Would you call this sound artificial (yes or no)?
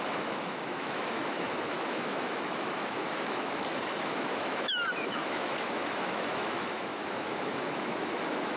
yes